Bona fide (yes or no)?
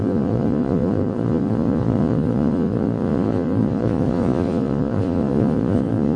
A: no